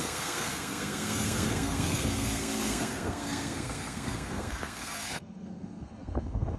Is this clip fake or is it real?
fake